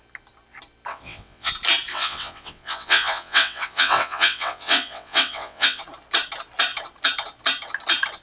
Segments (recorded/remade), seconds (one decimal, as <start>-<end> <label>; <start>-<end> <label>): 0.0-0.9 recorded; 0.9-1.5 remade; 1.5-1.9 recorded; 1.9-5.8 remade; 5.8-8.2 recorded